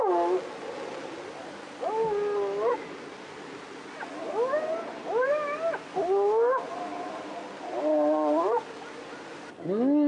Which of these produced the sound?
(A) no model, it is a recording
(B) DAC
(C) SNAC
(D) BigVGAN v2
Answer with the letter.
A